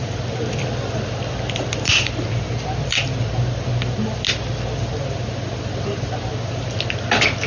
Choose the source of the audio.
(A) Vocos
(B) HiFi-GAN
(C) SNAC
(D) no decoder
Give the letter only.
D